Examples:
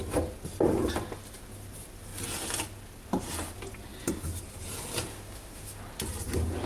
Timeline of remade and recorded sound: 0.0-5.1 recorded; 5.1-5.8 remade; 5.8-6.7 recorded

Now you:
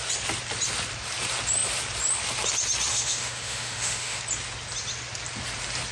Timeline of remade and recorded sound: 0.0-2.9 recorded; 2.9-4.2 remade; 4.2-5.9 recorded

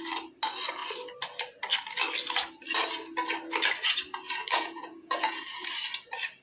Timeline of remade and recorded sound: 0.0-4.5 recorded; 4.5-5.4 remade; 5.4-6.4 recorded

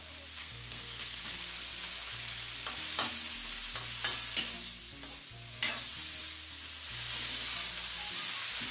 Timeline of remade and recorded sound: 0.0-0.4 recorded; 0.4-1.2 remade; 1.2-8.7 recorded